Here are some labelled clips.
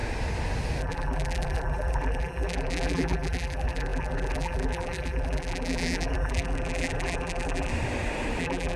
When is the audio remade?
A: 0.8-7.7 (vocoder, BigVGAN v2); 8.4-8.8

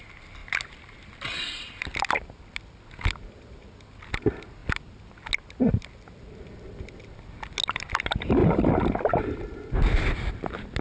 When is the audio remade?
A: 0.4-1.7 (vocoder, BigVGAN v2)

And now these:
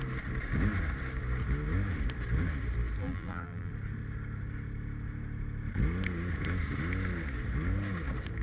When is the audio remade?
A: 3.0-3.7 (vocoder, BigVGAN v2)

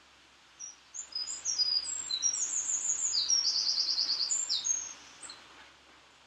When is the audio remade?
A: none

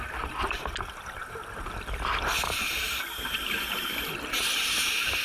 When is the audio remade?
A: none

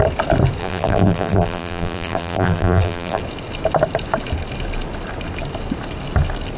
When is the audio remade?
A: 0.6-3.2 (vocoder, BigVGAN v2)

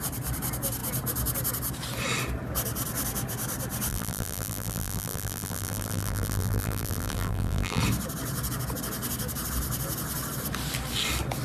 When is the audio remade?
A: 3.9-7.8 (vocoder, BigVGAN v2)

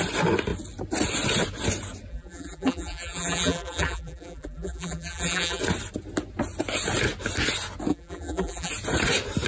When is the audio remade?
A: 2.1-5.6 (vocoder, BigVGAN v2); 7.9-8.7